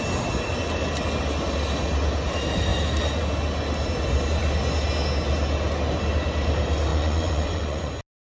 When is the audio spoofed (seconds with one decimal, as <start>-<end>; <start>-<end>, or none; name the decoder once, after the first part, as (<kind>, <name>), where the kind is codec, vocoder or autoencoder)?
6.9-7.9 (vocoder, Vocos)